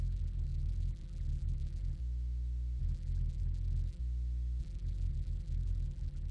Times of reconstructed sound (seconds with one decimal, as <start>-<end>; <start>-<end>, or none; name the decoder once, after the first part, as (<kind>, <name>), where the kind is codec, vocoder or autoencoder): 0.0-2.0 (vocoder, BigVGAN v2); 2.8-4.0; 4.6-6.3